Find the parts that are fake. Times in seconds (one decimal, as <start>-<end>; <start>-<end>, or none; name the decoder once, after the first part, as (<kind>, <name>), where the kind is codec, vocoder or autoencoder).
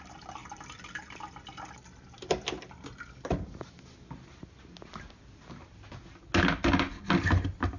none